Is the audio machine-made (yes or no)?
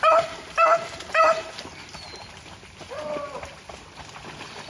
no